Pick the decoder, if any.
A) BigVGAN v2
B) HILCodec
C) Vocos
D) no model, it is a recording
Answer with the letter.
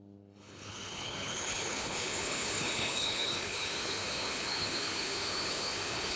B